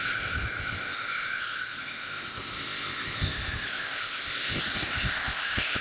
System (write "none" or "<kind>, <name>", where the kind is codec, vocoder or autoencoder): codec, ZipCodec